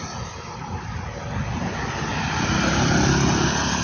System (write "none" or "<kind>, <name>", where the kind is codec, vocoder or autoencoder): none